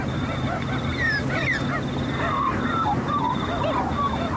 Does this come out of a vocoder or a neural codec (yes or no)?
yes